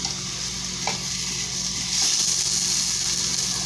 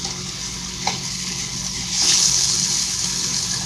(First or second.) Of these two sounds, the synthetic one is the second